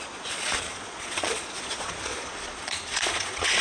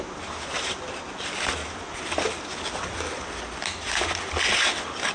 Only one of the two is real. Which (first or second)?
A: second